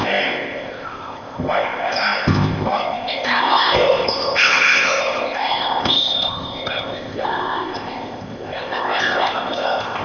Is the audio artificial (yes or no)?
yes